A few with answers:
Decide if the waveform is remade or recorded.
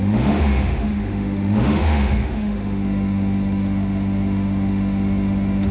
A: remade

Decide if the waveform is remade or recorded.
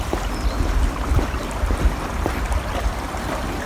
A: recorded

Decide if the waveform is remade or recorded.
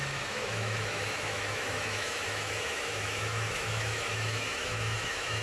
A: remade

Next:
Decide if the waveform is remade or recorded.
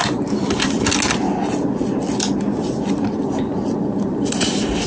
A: recorded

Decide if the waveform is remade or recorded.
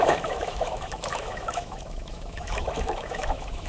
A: remade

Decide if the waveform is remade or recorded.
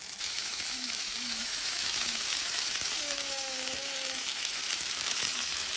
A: remade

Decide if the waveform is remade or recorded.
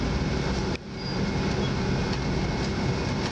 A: recorded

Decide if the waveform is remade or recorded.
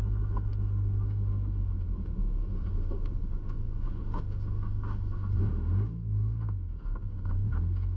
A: remade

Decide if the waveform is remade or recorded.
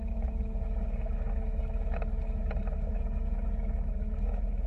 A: remade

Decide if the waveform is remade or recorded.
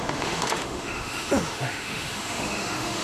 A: remade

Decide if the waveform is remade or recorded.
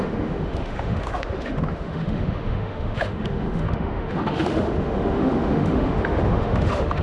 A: remade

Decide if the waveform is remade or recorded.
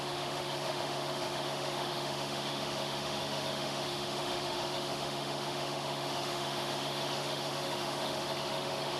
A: remade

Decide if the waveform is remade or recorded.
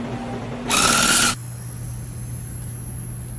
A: recorded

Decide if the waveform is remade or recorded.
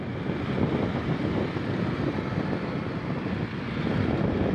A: recorded